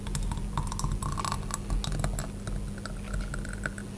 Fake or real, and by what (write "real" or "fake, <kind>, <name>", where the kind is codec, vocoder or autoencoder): real